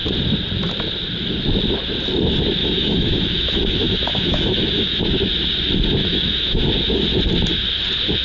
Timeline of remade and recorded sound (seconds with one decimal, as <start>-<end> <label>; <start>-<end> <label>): 0.0-2.6 recorded; 2.6-5.0 remade; 5.0-6.0 recorded; 6.0-6.6 remade; 6.6-8.2 recorded